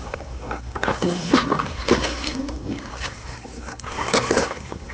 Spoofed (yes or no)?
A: yes